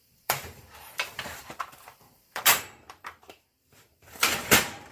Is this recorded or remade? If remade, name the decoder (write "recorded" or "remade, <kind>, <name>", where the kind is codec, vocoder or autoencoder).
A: remade, vocoder, BigVGAN v2